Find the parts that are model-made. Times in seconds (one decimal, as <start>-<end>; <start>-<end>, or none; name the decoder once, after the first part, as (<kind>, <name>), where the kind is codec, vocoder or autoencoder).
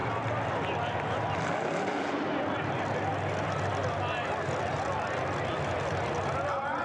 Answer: none